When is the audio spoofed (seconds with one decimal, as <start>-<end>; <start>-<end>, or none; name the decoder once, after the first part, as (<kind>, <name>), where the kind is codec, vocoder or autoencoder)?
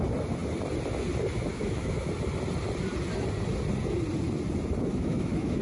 1.5-2.1 (autoencoder, DAC-VAE); 4.9-5.6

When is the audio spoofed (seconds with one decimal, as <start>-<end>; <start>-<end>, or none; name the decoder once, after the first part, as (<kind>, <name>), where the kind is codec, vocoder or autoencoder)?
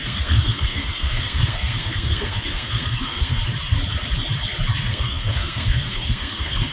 0.0-3.4 (codec, SNAC); 4.8-6.7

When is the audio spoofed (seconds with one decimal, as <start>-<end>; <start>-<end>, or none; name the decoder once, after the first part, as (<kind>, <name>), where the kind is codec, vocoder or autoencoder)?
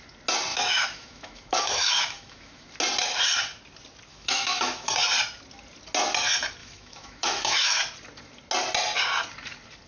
0.5-2.7 (autoencoder, DAC-VAE); 4.1-4.9; 6.6-7.8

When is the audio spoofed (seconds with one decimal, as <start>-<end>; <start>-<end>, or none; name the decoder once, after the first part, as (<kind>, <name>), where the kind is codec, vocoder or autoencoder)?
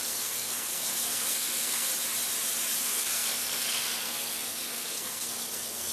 0.0-1.9 (codec, SNAC); 2.8-5.9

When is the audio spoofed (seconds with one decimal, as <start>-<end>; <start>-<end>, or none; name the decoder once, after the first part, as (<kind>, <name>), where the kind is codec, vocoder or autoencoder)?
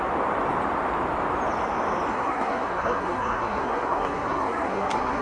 2.1-5.2 (codec, SNAC)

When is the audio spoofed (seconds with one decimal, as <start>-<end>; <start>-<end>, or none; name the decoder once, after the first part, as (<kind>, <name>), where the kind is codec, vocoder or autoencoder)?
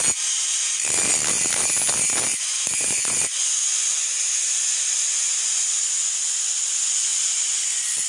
2.3-4.2 (vocoder, Vocos)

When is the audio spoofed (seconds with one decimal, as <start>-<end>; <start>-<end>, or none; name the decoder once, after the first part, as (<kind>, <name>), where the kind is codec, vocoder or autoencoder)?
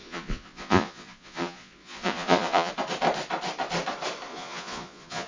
0.0-2.7 (vocoder, Vocos); 4.3-5.3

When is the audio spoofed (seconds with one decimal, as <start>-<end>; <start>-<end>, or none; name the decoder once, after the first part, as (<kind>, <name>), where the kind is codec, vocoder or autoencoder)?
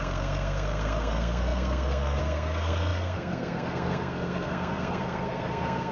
0.0-5.9 (codec, SNAC)